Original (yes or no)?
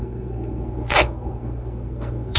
no